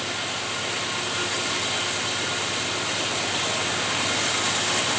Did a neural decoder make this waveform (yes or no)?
no